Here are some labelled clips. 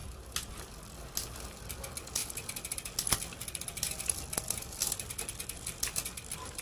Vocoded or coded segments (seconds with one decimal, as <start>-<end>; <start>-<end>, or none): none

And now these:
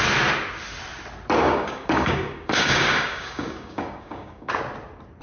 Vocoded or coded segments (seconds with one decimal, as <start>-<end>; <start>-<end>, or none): 1.4-4.5

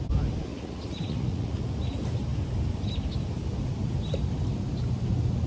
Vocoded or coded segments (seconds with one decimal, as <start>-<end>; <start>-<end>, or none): 0.5-1.6

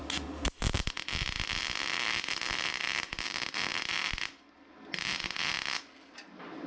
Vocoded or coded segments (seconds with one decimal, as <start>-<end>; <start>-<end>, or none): none

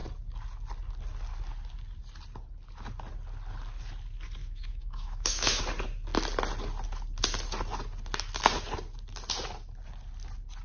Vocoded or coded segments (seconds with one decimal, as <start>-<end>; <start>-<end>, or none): 4.4-5.6

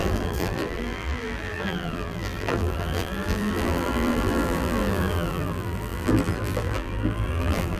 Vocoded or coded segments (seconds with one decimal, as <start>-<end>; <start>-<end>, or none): 0.0-7.8